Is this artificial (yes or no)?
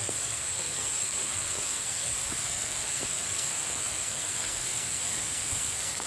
yes